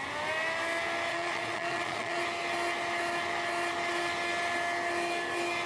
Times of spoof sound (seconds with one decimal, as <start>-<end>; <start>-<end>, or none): 1.1-2.2